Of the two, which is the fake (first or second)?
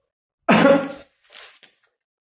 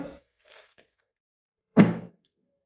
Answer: second